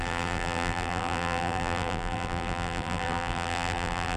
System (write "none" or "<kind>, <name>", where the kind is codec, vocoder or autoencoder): vocoder, BigVGAN v2